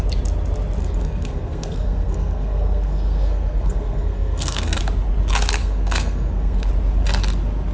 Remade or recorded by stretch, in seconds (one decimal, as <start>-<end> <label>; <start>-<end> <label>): 0.0-0.8 recorded; 0.8-4.8 remade; 4.8-5.6 recorded; 5.6-6.7 remade; 6.7-7.7 recorded